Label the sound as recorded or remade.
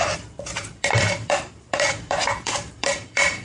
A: remade